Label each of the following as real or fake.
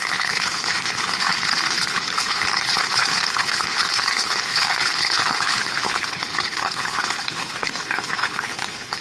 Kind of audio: fake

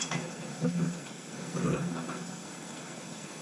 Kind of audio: fake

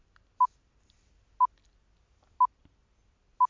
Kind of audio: real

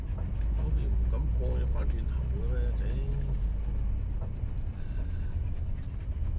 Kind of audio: real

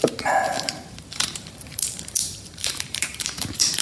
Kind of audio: fake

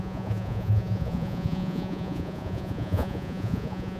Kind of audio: fake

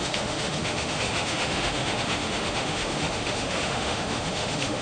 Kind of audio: fake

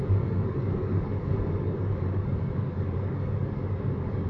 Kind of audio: fake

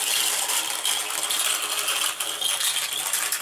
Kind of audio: real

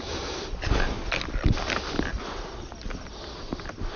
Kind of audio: real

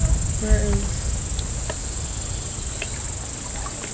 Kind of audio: real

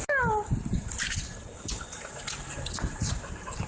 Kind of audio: real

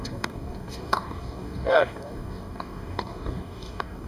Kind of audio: fake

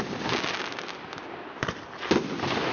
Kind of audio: real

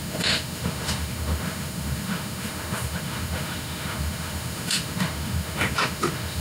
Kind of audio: fake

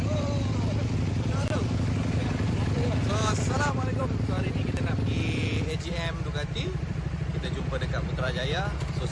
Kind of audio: fake